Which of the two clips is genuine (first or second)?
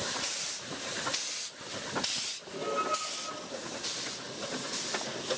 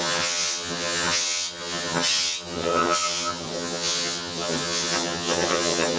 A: first